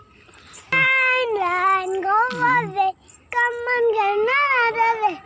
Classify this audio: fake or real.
real